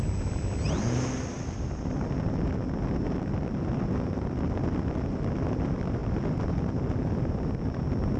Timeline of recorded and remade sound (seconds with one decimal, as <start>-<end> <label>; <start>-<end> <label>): 0.0-6.0 recorded; 6.0-6.8 remade; 6.8-8.2 recorded